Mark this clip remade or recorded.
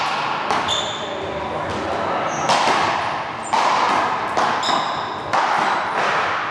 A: recorded